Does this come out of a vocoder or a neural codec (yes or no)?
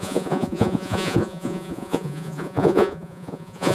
yes